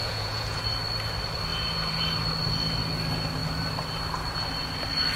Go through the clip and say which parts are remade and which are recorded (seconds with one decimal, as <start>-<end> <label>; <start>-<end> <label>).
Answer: 0.0-0.6 remade; 0.6-5.2 recorded